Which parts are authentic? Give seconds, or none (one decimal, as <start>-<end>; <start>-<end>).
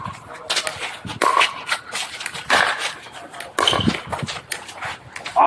0.0-1.0; 2.6-5.5